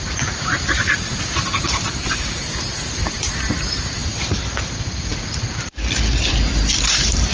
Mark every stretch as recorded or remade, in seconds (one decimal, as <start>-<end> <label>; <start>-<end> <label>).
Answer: 0.0-5.1 remade; 5.1-6.3 recorded; 6.3-7.3 remade